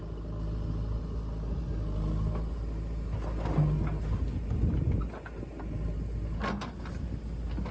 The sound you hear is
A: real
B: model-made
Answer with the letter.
A